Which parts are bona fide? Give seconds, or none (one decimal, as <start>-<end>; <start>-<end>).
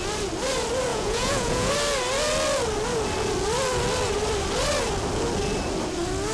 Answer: 0.0-0.9; 1.7-6.3